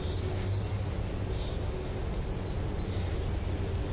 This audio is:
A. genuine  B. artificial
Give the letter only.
A